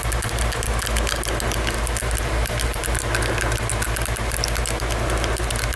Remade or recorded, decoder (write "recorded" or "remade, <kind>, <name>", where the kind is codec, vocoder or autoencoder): recorded